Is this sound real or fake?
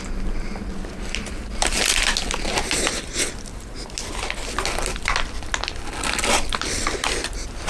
real